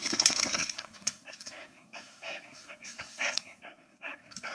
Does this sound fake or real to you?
fake